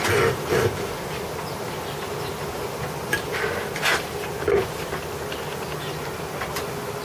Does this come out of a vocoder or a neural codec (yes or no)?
no